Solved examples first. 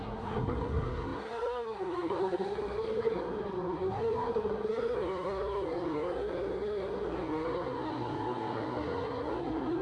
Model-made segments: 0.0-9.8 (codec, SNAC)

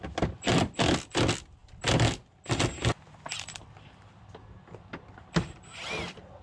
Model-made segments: none

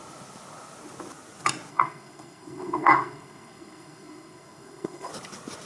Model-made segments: 1.7-5.1 (codec, SNAC)